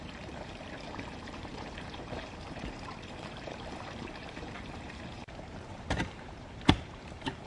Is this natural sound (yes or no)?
no